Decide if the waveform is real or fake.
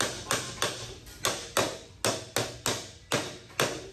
real